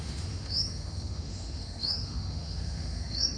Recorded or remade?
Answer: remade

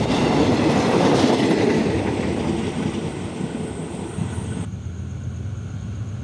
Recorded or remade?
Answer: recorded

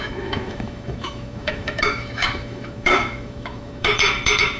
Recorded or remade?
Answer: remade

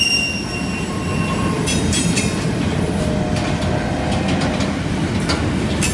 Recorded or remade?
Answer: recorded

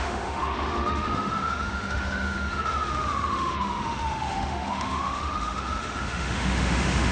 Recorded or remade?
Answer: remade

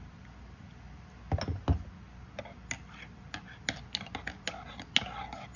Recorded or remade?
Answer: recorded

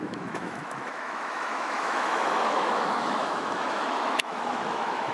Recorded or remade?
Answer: remade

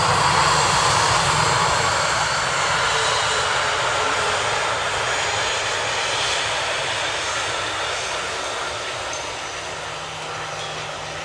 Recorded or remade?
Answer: recorded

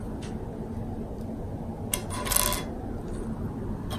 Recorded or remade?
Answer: recorded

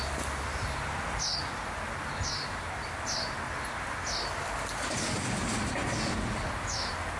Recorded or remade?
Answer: recorded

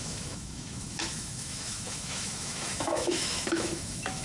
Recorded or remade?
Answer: remade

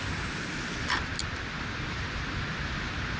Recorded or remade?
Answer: recorded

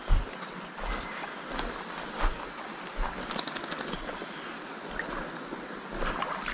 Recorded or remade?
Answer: recorded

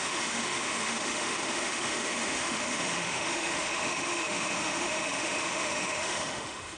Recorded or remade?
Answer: remade